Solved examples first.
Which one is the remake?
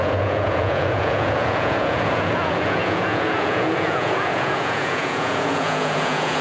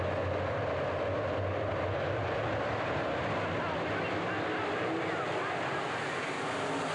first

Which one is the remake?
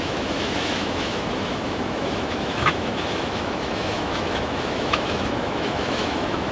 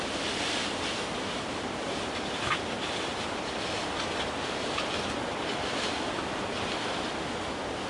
first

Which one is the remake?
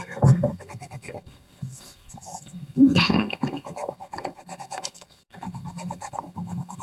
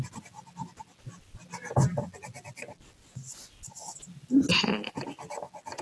first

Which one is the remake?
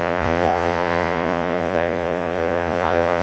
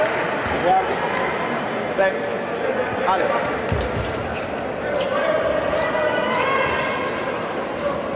first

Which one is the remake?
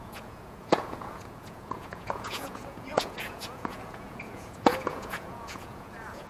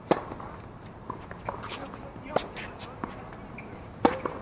first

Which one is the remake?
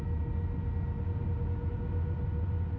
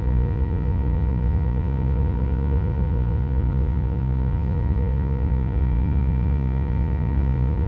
second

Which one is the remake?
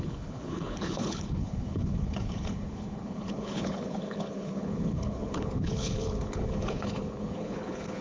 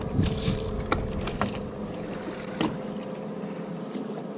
first